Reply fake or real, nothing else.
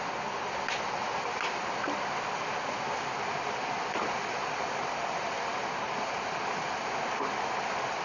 real